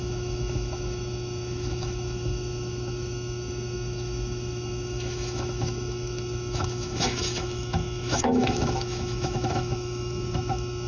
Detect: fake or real fake